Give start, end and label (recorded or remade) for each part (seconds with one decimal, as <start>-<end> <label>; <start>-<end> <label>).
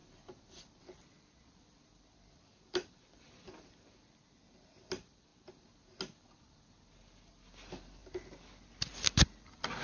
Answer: 0.0-0.8 recorded; 0.8-5.3 remade; 5.3-6.4 recorded; 6.4-9.8 remade